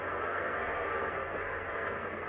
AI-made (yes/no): yes